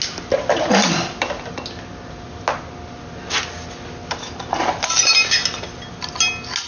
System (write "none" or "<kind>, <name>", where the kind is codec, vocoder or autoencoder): none